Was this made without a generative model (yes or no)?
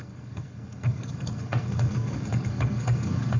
no